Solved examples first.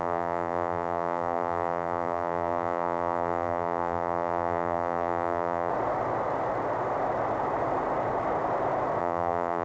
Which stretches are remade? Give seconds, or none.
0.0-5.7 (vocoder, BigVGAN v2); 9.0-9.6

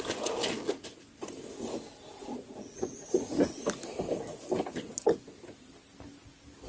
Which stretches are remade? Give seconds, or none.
2.2-3.3 (vocoder, Vocos)

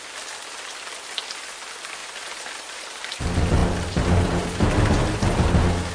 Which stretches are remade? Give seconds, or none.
2.0-3.2 (vocoder, BigVGAN v2); 3.6-5.2

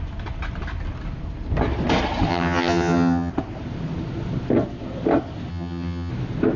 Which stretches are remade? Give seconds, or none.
2.3-3.3 (vocoder, HiFi-GAN); 5.5-6.1

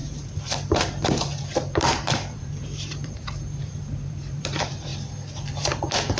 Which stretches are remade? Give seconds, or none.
0.0-4.9 (vocoder, BigVGAN v2)

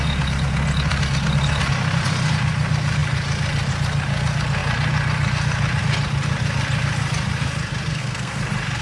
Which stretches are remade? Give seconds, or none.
7.9-8.4 (codec, SNAC)

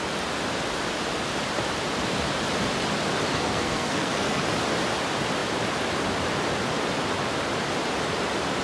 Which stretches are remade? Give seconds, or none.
3.3-4.4 (codec, SNAC)

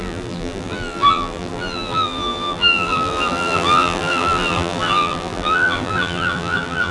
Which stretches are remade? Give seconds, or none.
0.0-6.9 (vocoder, BigVGAN v2)